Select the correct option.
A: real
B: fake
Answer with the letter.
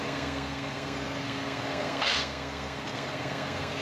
B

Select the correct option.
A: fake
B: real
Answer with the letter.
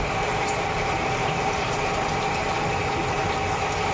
A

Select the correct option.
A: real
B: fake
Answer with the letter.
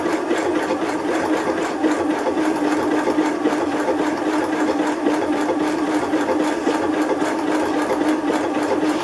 A